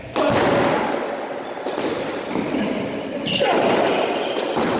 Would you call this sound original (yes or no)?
yes